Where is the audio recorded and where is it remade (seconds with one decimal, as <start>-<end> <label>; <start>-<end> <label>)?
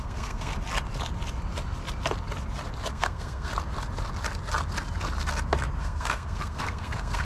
0.0-0.5 remade; 0.5-2.9 recorded; 2.9-3.5 remade; 3.5-5.8 recorded; 5.8-7.2 remade